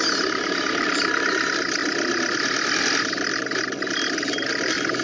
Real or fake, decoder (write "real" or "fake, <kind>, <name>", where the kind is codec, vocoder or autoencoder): real